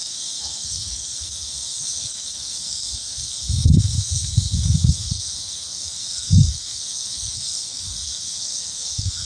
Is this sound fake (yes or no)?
yes